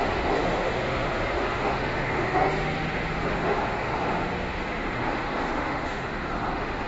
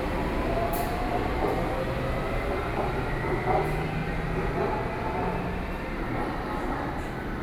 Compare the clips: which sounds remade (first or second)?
first